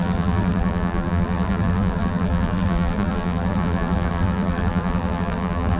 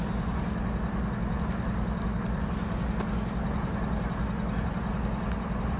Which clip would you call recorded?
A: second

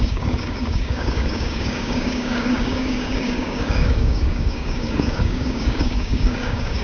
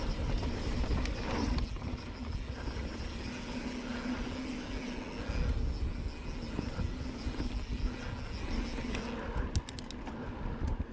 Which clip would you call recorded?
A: second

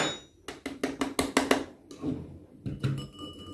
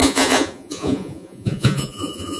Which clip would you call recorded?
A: first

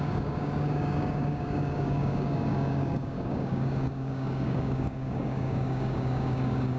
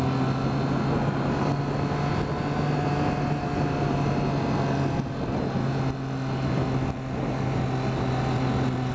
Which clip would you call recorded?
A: second